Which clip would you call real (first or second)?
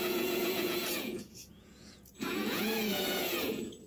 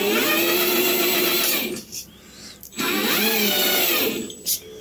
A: second